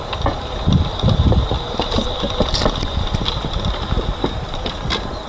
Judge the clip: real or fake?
real